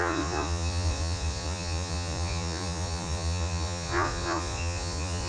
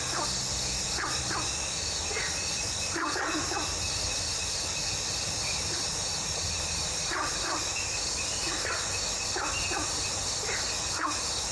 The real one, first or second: second